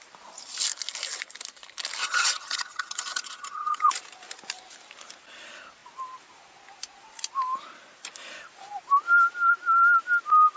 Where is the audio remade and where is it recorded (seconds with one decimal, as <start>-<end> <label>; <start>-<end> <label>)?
0.0-2.0 recorded; 2.0-3.9 remade; 3.9-10.6 recorded